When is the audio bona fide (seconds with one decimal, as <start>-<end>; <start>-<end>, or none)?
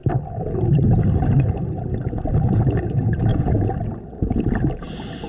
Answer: 0.0-3.3; 3.8-5.3